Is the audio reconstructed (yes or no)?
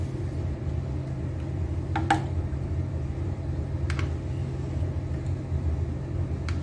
no